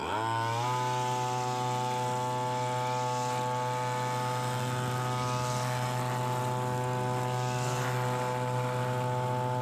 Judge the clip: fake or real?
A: real